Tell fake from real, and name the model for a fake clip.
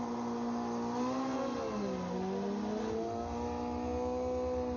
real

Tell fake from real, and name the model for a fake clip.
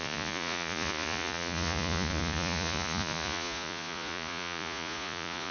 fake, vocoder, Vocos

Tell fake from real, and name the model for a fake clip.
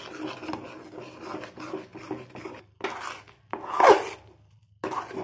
real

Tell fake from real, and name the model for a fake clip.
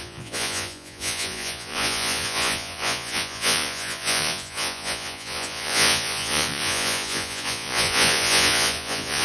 fake, vocoder, Vocos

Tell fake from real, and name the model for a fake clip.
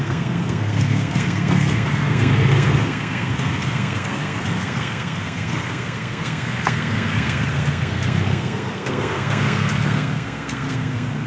fake, codec, SNAC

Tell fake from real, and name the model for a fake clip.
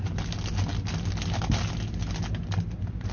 real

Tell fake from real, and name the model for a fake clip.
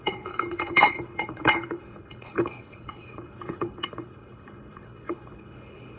fake, codec, HILCodec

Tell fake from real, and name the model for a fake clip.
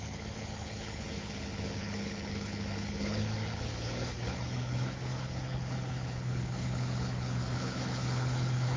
fake, codec, HILCodec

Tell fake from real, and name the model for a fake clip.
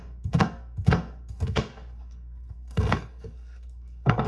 fake, codec, SNAC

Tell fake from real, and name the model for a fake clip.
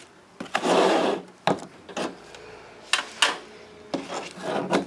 real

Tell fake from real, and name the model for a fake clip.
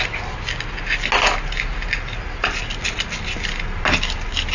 real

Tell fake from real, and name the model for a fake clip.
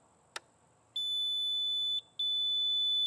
real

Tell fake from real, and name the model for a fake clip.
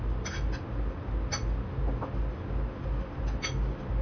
real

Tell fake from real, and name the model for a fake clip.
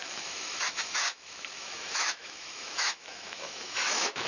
fake, autoencoder, DAC-VAE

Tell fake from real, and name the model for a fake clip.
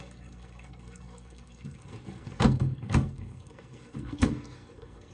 fake, codec, SNAC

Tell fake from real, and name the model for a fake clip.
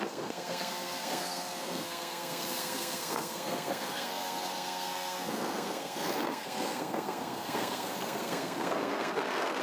fake, codec, SNAC